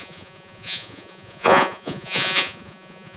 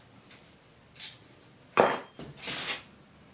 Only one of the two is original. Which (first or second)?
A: second